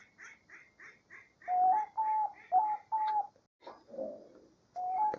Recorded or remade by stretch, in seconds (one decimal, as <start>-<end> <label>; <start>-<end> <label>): 0.0-5.2 recorded